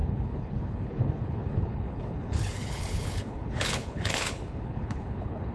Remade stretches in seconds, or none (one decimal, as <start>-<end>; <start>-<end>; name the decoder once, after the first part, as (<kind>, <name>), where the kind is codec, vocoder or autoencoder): 0.0-5.5 (codec, HILCodec)